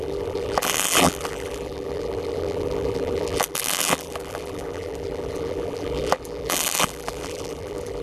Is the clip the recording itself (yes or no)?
no